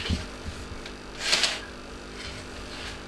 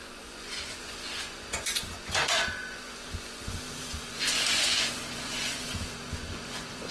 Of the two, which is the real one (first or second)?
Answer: first